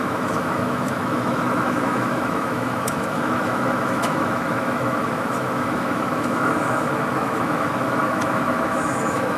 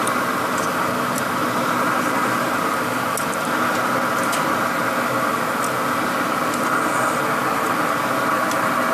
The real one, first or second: second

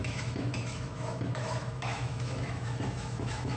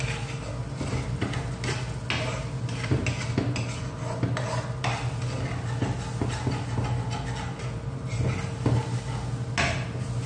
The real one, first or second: second